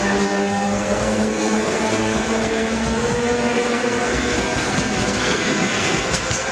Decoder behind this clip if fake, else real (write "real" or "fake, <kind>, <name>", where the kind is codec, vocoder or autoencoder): fake, codec, SNAC